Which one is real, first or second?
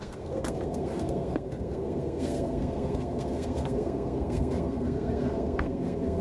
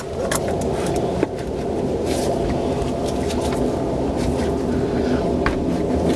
second